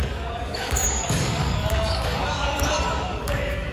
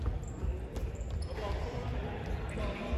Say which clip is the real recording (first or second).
second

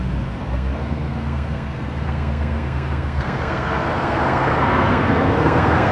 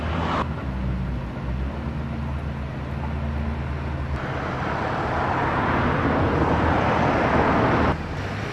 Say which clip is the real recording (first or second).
second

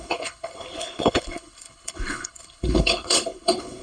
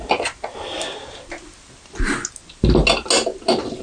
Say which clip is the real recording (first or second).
second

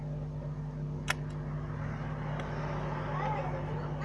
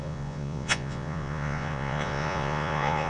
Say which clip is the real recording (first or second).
first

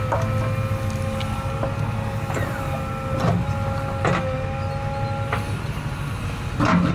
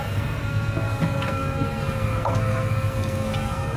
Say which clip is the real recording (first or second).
first